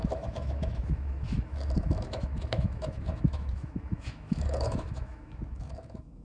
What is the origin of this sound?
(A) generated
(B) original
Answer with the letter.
A